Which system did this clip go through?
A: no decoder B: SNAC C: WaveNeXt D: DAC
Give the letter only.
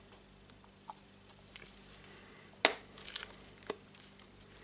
A